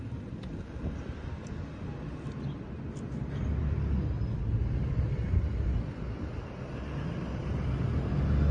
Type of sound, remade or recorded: recorded